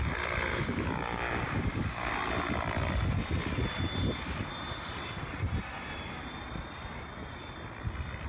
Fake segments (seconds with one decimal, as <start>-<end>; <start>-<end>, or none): 0.5-2.1